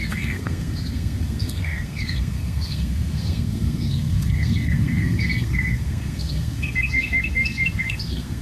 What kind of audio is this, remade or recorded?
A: remade